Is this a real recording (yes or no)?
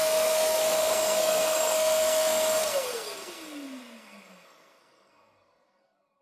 no